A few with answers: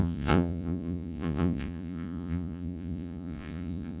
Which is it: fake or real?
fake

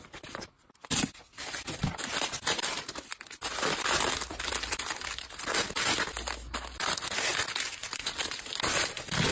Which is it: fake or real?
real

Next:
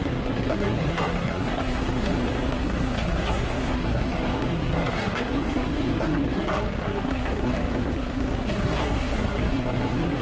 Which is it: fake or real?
fake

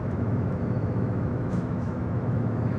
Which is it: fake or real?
fake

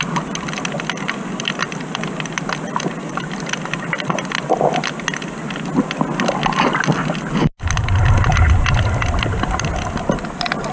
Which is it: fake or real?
real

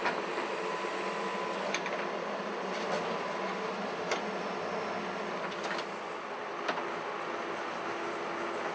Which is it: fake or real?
real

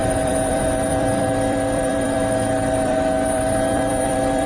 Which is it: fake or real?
fake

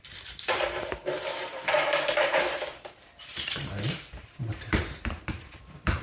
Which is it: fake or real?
fake